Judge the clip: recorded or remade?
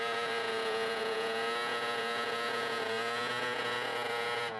remade